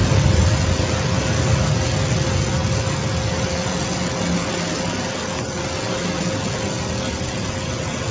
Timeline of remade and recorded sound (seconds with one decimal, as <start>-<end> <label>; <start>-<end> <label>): 0.0-8.1 recorded